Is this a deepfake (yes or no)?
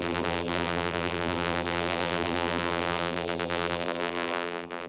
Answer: yes